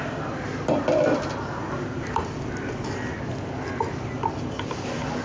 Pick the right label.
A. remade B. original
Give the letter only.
B